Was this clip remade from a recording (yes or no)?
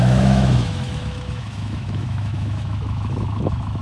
yes